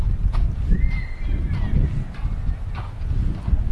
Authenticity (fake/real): real